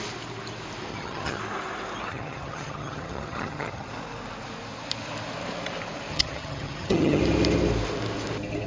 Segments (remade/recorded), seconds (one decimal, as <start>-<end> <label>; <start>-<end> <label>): 0.0-0.9 recorded; 0.9-1.4 remade; 1.4-2.1 recorded; 2.1-3.9 remade; 3.9-6.1 recorded; 6.1-7.2 remade; 7.2-8.7 recorded